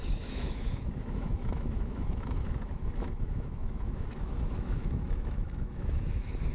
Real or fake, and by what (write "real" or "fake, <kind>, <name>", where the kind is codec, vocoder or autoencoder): fake, autoencoder, DAC-VAE